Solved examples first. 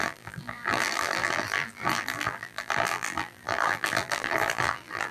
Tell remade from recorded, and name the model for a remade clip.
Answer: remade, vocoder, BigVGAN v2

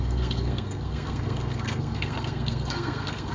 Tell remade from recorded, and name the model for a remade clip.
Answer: remade, codec, SNAC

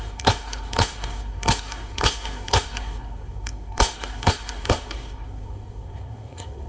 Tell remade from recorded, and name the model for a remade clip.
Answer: remade, codec, SNAC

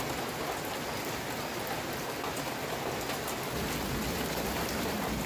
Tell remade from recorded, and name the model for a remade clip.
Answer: recorded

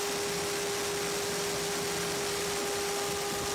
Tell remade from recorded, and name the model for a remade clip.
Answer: recorded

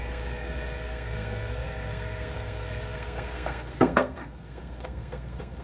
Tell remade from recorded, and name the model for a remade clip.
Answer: remade, codec, SNAC